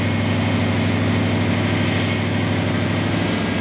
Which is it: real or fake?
real